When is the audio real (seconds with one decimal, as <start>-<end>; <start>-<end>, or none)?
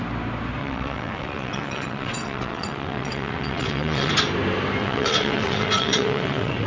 0.0-0.6; 4.1-4.8